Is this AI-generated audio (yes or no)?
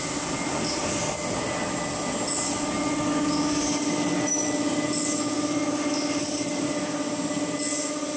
no